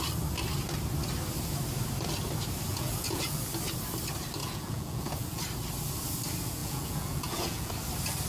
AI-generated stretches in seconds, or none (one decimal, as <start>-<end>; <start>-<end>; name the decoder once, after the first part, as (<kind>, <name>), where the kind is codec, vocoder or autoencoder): 2.7-3.4 (vocoder, Vocos); 4.4-5.4; 6.6-7.7